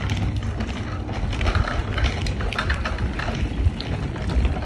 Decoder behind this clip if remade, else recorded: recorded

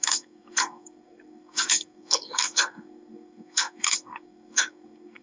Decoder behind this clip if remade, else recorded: remade, codec, SNAC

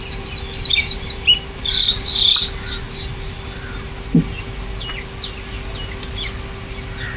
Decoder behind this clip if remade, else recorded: recorded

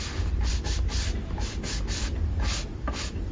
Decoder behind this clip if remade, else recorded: recorded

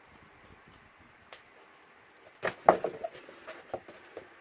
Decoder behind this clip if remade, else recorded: recorded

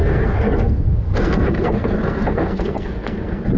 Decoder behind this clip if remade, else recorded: remade, codec, SNAC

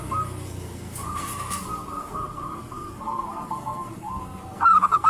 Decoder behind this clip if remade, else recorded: remade, codec, SNAC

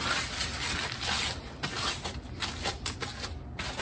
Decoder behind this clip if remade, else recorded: recorded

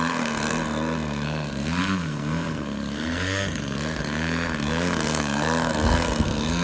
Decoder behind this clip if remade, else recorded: remade, codec, SNAC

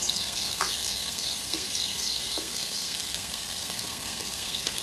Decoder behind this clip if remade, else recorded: remade, codec, SNAC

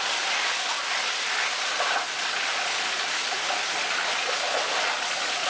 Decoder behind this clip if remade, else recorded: recorded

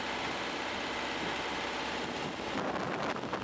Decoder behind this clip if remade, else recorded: recorded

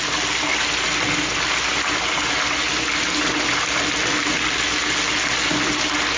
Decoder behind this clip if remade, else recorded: recorded